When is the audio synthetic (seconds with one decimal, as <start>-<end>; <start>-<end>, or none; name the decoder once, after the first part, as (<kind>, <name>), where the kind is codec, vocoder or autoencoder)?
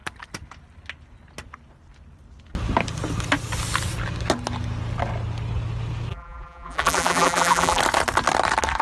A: 6.1-7.8 (vocoder, BigVGAN v2)